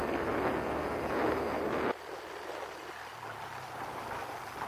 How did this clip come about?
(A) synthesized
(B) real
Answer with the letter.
B